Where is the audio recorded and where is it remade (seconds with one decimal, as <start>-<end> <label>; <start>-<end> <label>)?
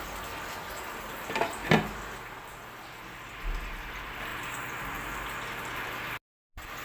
0.0-6.8 recorded